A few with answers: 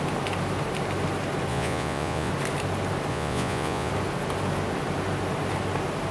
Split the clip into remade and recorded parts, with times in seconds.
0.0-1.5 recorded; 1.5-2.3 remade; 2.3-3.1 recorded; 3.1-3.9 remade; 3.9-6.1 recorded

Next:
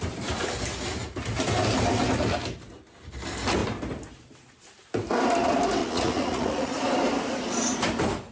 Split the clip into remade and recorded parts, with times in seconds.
0.0-5.8 recorded; 5.8-6.8 remade; 6.8-8.3 recorded

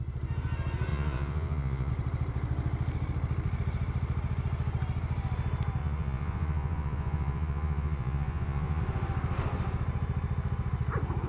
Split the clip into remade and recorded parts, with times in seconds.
0.0-0.9 recorded; 0.9-1.9 remade; 1.9-5.8 recorded; 5.8-8.8 remade; 8.8-11.3 recorded